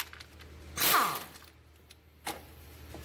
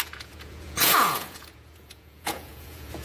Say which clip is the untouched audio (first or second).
first